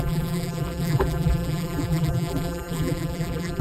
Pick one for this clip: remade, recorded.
remade